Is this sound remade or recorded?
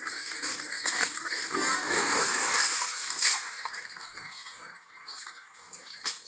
remade